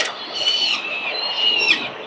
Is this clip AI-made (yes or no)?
no